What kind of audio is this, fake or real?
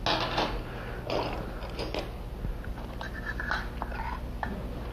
real